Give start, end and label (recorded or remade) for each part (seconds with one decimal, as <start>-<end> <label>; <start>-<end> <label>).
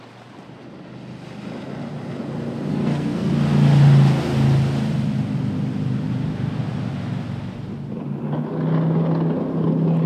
0.0-2.7 recorded; 2.7-3.3 remade; 3.3-10.1 recorded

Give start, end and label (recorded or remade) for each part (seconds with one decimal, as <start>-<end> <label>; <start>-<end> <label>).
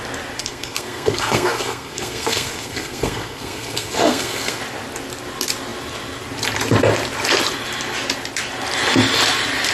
0.0-0.4 recorded; 0.4-4.6 remade; 4.6-9.7 recorded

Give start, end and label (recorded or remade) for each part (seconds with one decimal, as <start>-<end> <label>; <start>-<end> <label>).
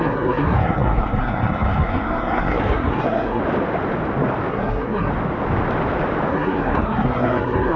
0.0-3.4 remade; 3.4-4.5 recorded; 4.5-5.1 remade; 5.1-6.3 recorded; 6.3-7.8 remade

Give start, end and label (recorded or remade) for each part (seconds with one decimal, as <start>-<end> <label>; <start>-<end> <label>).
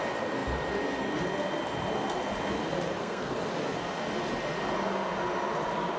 0.0-3.0 recorded; 3.0-3.5 remade; 3.5-6.0 recorded